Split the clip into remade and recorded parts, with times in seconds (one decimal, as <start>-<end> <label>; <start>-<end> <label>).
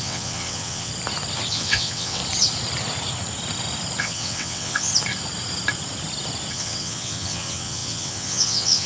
0.0-0.9 remade; 0.9-1.5 recorded; 1.5-2.2 remade; 2.2-4.0 recorded; 4.0-4.9 remade; 4.9-6.5 recorded; 6.5-8.9 remade